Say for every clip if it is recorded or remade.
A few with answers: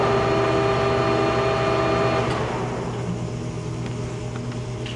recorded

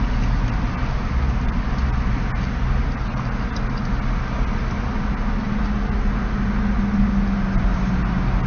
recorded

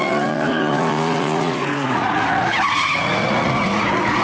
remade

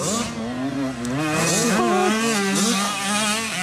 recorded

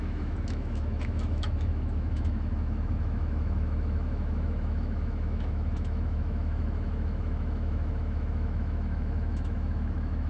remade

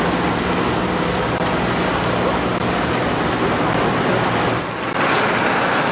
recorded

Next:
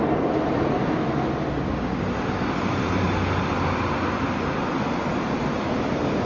recorded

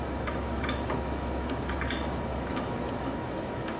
remade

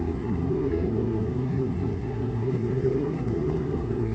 remade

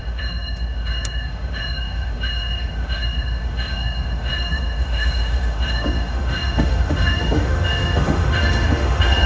remade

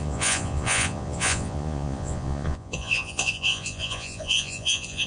remade